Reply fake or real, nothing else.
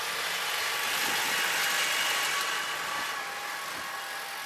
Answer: real